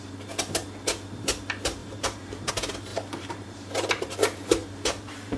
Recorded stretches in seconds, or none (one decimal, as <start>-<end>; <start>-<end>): 0.0-1.8; 2.5-2.9; 4.1-4.6